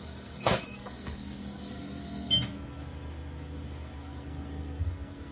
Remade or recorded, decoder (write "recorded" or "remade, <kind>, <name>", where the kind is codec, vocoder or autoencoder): remade, codec, SNAC